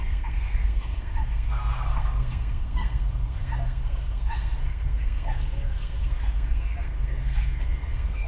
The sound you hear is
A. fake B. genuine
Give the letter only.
A